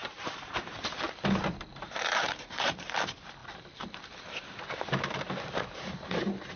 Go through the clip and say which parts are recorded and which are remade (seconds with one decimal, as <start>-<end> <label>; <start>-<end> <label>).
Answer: 0.0-0.8 remade; 0.8-1.7 recorded; 1.7-3.0 remade; 3.0-3.4 recorded; 3.4-6.6 remade